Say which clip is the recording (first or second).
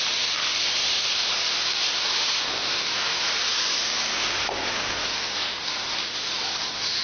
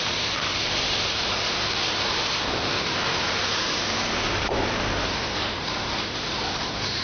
first